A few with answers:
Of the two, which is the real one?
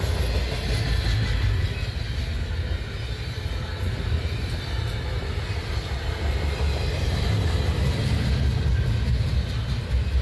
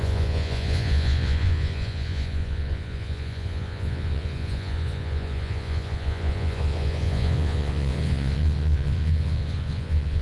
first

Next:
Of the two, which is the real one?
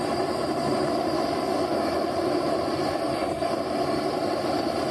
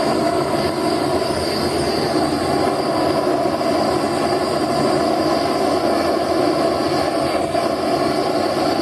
second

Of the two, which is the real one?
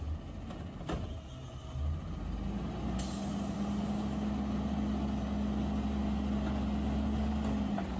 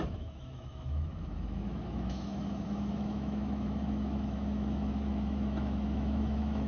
first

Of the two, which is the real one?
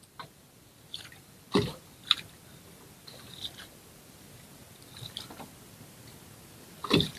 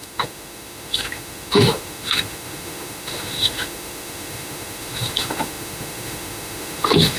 first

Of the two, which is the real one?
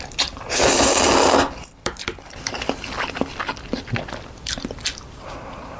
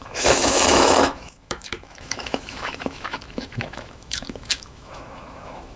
first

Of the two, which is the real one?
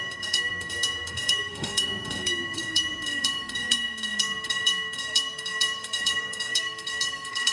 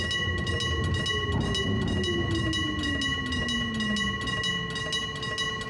second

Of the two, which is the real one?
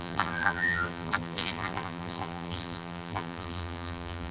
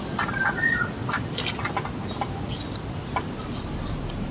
second